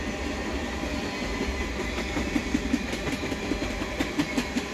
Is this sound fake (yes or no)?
no